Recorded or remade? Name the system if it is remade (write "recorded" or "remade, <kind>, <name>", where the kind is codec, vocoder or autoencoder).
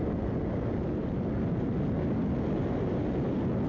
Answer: recorded